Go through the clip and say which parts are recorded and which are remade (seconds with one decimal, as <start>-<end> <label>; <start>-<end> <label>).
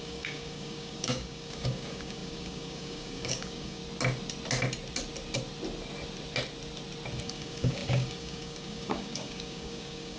0.0-3.8 remade; 3.8-7.2 recorded; 7.2-10.2 remade